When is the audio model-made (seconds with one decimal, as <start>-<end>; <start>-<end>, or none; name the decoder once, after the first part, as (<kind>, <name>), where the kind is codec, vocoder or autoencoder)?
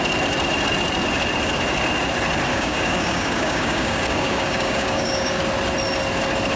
2.5-5.4 (codec, DAC)